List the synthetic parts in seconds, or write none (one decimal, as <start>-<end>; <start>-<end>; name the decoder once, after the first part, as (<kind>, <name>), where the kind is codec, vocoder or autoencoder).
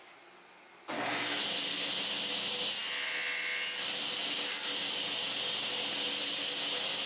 none